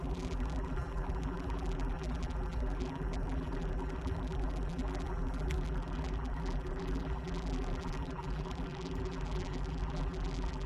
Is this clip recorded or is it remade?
remade